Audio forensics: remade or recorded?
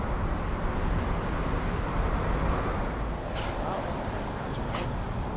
recorded